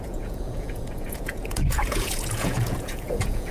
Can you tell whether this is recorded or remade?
remade